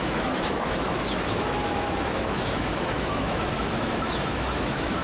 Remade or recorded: remade